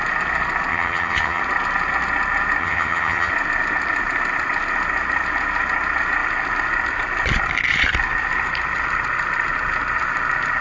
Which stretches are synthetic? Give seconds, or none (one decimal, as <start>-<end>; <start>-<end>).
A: 0.7-1.4; 2.6-3.3